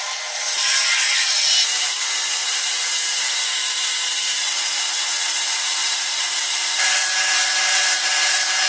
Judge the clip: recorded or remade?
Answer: remade